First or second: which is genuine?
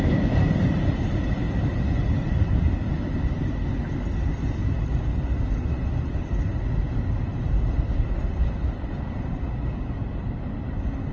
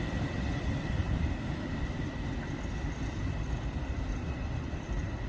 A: first